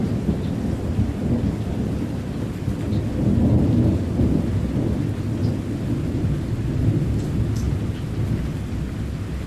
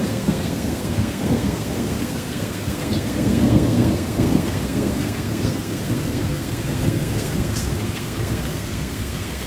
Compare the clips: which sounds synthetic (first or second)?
second